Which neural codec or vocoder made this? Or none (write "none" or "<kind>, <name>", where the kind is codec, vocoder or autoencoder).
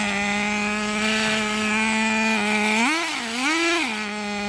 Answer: none